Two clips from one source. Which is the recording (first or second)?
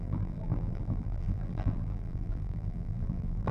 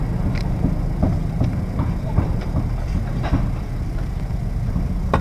second